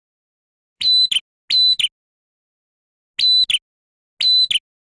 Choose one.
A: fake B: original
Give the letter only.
B